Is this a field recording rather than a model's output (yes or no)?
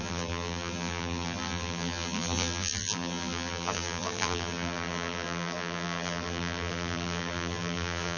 no